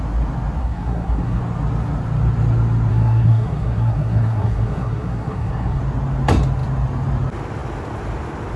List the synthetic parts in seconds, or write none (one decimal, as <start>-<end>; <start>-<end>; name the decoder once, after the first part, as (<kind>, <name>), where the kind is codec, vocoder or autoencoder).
0.6-1.4 (codec, SNAC); 2.9-5.8